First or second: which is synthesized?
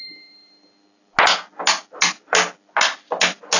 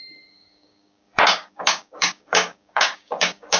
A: second